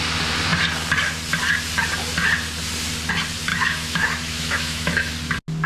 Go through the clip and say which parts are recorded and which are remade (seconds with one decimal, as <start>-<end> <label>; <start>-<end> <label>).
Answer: 0.0-3.5 recorded; 3.5-5.1 remade; 5.1-5.7 recorded